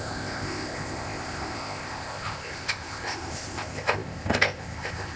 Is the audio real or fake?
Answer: fake